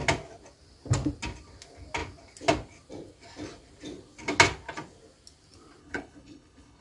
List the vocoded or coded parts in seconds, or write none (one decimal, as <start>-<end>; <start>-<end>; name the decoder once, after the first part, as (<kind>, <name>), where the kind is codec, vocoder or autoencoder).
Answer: 5.8-6.8 (codec, HILCodec)